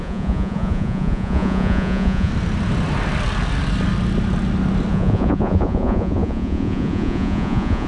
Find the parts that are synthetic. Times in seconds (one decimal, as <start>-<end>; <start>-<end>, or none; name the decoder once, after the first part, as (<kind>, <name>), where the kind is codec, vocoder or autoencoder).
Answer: 0.0-2.3 (vocoder, Vocos); 4.9-7.9